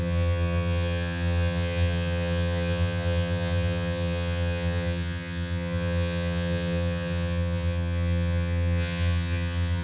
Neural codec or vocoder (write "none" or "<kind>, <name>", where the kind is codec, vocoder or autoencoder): vocoder, HiFi-GAN